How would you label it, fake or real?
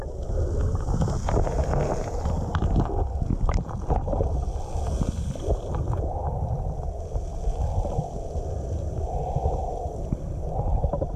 real